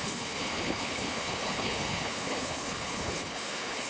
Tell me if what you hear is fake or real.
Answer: fake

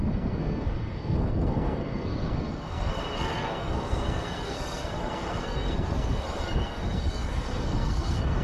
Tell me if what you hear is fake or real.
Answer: fake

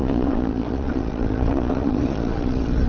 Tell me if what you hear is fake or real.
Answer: fake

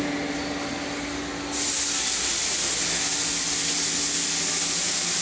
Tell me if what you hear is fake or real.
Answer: real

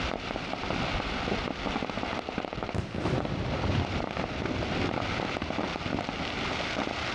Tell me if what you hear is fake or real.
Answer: fake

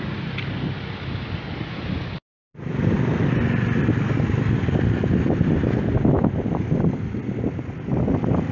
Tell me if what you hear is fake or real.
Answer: real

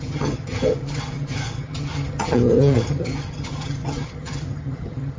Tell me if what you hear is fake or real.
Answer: fake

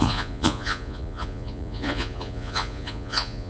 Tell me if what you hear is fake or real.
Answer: fake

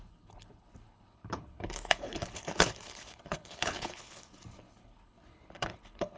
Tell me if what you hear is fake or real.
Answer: fake